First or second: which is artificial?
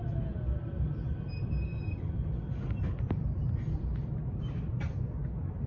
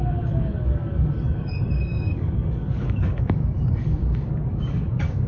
second